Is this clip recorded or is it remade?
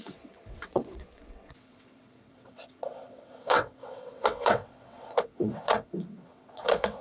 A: remade